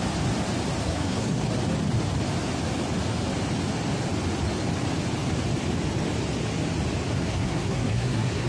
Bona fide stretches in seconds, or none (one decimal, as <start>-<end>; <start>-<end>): 0.0-0.8; 1.5-7.1